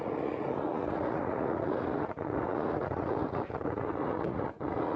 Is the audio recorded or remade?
remade